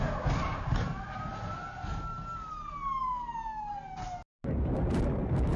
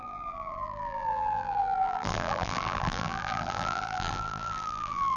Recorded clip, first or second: first